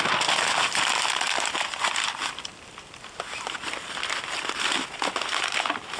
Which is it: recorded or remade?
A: recorded